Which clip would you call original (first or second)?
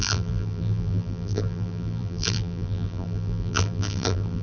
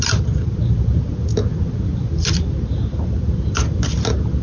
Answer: second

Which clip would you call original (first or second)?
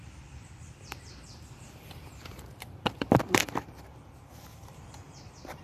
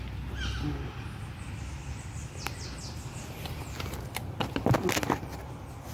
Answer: second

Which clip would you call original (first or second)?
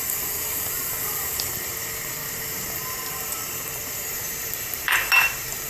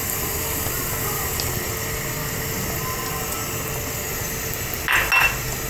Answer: second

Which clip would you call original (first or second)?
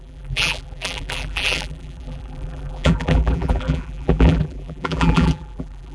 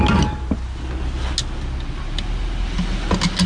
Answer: second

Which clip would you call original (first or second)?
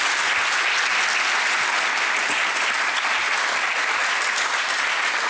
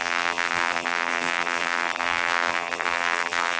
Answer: first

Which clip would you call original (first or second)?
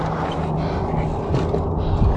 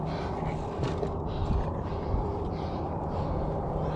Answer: first